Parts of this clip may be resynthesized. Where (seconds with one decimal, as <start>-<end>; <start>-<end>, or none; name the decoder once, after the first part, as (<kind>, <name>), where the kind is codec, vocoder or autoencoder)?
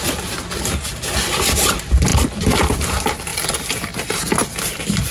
2.1-2.8 (vocoder, BigVGAN v2); 3.3-4.0